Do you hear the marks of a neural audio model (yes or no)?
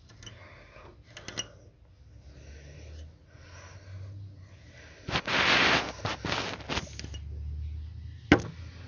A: no